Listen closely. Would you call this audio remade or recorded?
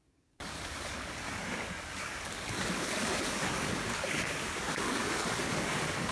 remade